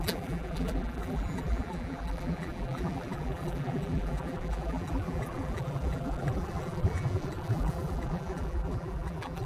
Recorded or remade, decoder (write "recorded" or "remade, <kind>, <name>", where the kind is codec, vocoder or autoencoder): remade, vocoder, BigVGAN v2